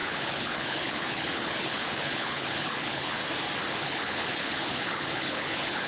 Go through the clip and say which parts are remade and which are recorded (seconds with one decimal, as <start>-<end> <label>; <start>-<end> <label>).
0.0-3.2 remade; 3.2-3.7 recorded; 3.7-5.9 remade